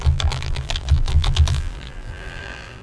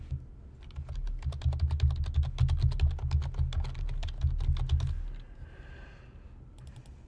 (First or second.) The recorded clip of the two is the second